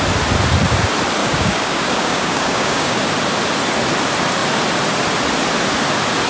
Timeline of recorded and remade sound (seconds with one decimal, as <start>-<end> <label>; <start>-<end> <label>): 0.0-1.2 recorded; 1.2-3.0 remade; 3.0-6.3 recorded